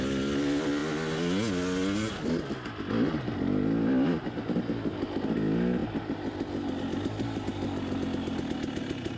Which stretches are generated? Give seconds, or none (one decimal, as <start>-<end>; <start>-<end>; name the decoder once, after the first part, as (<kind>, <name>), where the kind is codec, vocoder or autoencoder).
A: none